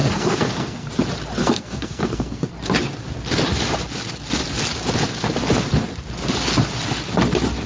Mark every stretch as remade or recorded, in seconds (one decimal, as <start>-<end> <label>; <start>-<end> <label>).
0.0-0.9 remade; 0.9-1.4 recorded; 1.4-2.5 remade; 2.5-7.7 recorded